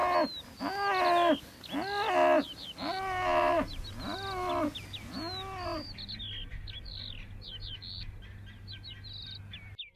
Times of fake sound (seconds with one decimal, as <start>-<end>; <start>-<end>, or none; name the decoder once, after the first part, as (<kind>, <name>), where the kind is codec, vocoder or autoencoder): 3.4-3.9 (vocoder, BigVGAN v2)